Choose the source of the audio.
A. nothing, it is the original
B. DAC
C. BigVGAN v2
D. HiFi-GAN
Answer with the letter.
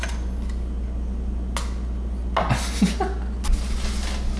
A